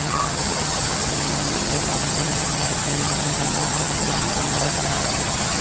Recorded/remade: remade